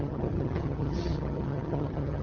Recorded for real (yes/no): no